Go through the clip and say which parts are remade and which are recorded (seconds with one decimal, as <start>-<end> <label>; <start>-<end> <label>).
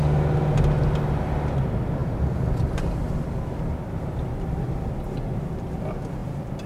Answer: 0.0-2.0 recorded; 2.0-4.9 remade; 4.9-6.2 recorded; 6.2-6.7 remade